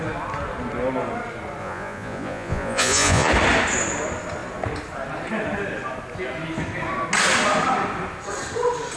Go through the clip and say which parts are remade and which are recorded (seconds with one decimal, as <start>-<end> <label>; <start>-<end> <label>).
0.0-1.6 recorded; 1.6-3.3 remade; 3.3-9.0 recorded